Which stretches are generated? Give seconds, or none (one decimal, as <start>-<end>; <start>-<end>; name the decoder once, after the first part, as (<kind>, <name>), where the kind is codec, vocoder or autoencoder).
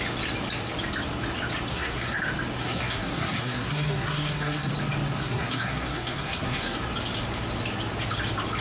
1.7-2.2 (codec, SNAC); 2.6-4.7; 5.2-6.8